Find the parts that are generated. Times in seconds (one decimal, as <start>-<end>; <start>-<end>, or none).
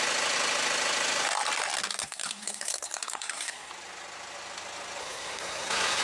2.0-3.7; 5.0-6.0